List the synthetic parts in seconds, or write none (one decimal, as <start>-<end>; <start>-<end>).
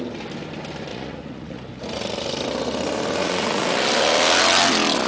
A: 0.9-1.6; 3.2-3.7